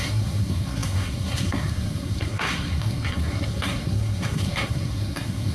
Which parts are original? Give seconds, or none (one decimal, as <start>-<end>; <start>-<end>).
none

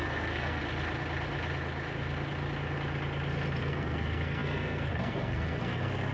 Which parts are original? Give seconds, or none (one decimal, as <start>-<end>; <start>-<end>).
0.6-3.6